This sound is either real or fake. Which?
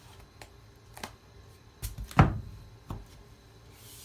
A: real